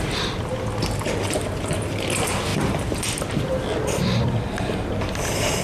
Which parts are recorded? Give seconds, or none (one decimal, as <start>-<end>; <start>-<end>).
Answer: 0.0-5.6

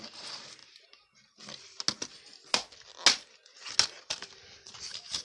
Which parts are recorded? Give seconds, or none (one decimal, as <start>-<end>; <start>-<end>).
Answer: 0.0-5.2

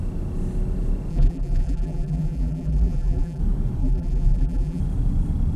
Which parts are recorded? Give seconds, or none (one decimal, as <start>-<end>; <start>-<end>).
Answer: 0.0-1.1; 3.4-3.8; 4.8-5.6

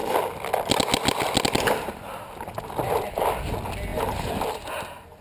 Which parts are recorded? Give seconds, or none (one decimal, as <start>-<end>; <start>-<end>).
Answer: 0.0-5.2

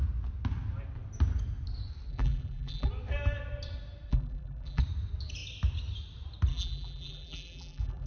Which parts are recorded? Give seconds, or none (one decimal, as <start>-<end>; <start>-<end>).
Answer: 0.0-2.1; 2.9-4.1; 4.8-6.5

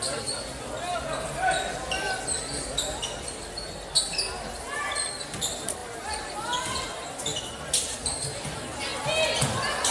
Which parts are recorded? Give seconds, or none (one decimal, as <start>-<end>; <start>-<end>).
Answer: 0.0-9.9

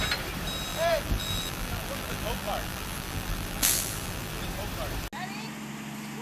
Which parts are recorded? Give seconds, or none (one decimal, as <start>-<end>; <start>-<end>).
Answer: 0.0-0.7; 4.4-6.2

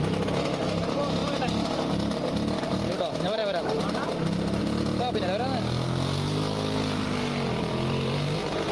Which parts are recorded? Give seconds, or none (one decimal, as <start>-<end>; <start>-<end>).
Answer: 1.2-2.6; 4.6-7.5